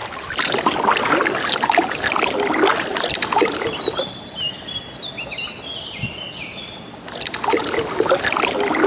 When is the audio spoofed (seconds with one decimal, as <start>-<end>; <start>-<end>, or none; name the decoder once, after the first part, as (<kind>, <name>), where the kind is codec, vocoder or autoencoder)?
none